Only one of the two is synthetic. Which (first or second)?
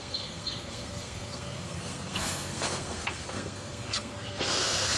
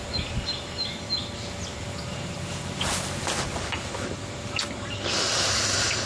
first